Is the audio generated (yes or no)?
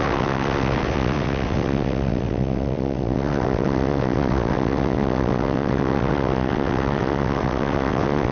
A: yes